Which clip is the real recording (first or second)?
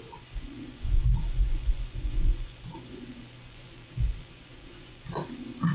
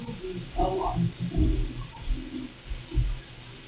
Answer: second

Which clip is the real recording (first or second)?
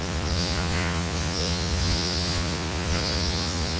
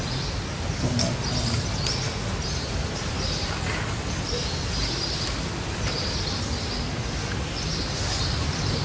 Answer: second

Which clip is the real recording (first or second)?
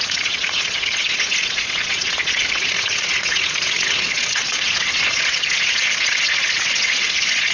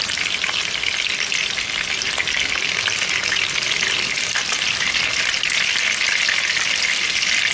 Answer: second